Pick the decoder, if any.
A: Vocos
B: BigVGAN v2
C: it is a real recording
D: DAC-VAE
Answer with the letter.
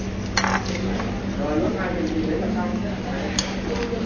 C